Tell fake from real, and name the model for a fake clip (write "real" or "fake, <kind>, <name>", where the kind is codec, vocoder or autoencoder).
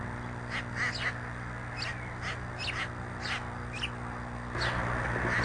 real